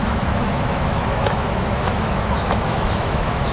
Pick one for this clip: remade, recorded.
remade